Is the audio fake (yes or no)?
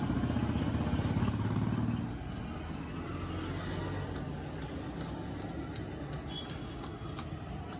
no